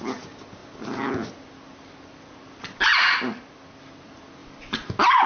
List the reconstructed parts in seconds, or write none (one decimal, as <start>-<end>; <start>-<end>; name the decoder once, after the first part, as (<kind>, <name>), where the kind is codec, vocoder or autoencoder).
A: 4.4-5.3 (vocoder, BigVGAN v2)